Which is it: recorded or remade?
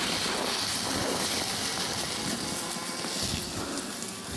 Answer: recorded